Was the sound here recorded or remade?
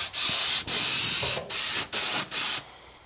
recorded